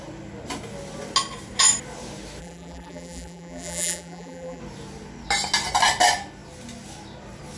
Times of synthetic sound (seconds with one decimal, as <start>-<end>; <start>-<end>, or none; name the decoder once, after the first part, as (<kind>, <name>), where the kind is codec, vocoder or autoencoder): 2.4-4.6 (vocoder, BigVGAN v2)